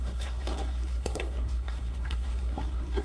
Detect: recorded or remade remade